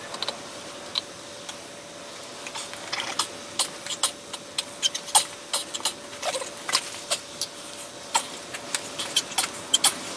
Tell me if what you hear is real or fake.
real